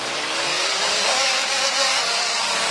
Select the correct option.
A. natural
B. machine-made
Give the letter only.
B